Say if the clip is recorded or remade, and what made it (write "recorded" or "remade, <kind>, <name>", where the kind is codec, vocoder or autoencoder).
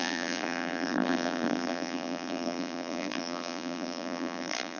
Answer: remade, vocoder, BigVGAN v2